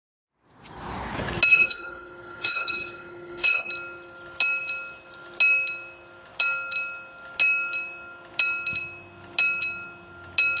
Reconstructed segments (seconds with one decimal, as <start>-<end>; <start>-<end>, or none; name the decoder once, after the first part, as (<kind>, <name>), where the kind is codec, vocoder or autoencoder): 1.5-3.7 (codec, HILCodec)